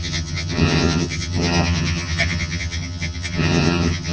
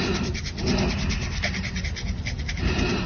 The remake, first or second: first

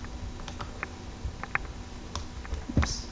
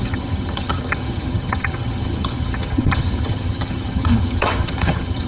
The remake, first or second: second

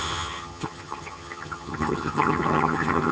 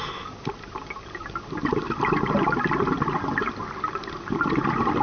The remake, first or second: first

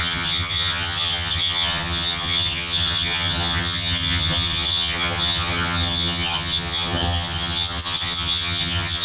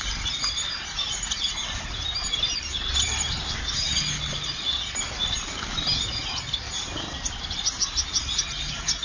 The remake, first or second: first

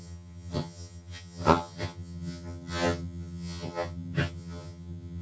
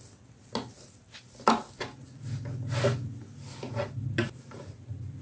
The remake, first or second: first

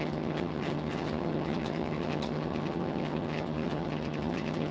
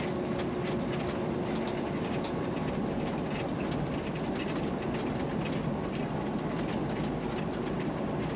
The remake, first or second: first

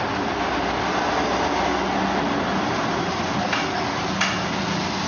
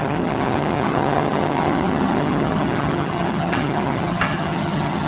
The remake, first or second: second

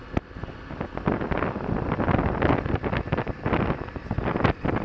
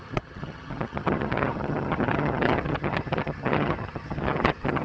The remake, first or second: second